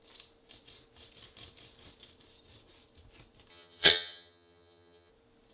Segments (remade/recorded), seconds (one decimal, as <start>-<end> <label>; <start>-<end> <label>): 0.0-3.5 recorded; 3.5-5.1 remade; 5.1-5.5 recorded